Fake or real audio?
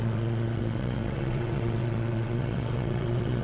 fake